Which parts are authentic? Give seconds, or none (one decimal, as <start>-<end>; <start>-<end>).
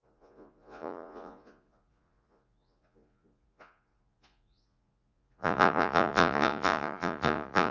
none